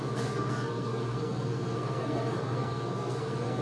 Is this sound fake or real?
fake